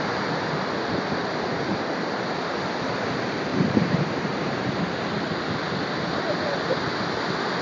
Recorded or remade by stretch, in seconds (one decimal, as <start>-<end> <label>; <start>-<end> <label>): 0.0-3.5 recorded; 3.5-4.7 remade; 4.7-7.6 recorded